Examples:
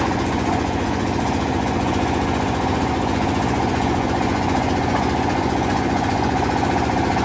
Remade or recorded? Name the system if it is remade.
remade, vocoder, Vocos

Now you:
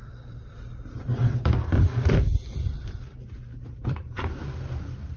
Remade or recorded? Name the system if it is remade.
remade, vocoder, BigVGAN v2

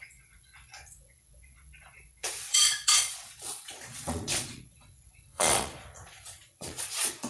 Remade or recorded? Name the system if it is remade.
remade, vocoder, Vocos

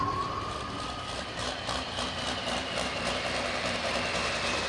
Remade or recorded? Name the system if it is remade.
remade, vocoder, BigVGAN v2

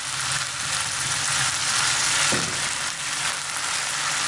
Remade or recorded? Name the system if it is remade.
recorded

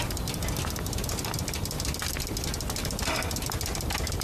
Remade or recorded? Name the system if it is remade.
recorded